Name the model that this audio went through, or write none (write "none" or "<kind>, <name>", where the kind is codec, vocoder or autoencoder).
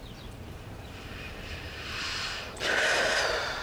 vocoder, BigVGAN v2